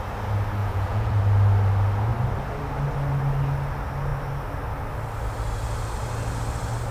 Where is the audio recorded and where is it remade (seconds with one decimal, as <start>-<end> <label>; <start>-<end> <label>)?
0.0-0.6 recorded; 0.6-1.2 remade; 1.2-6.9 recorded